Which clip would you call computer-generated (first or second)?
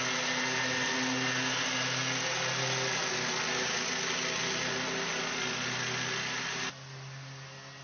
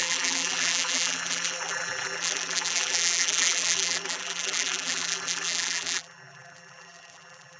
second